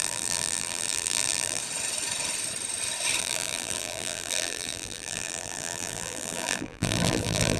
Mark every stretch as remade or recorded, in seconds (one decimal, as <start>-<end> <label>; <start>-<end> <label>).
0.0-1.6 remade; 1.6-3.2 recorded; 3.2-7.6 remade